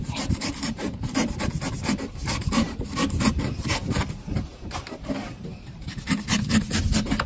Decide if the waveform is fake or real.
fake